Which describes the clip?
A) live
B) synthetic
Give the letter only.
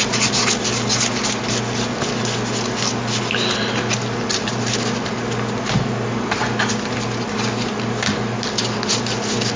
A